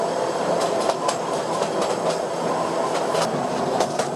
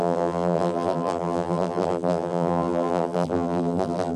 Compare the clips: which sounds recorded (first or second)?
first